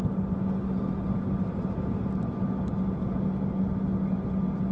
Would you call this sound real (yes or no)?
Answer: yes